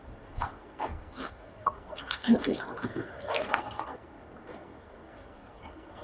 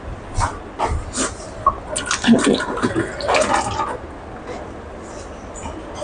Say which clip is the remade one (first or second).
first